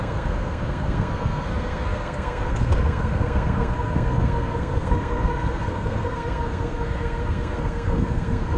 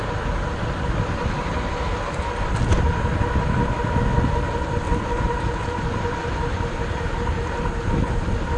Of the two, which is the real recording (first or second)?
second